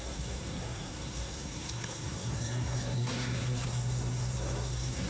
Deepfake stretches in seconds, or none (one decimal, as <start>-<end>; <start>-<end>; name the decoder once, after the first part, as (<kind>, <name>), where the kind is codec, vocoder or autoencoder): 0.0-5.1 (codec, SNAC)